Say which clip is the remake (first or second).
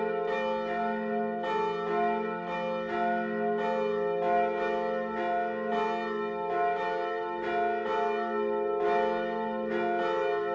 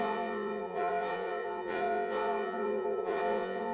second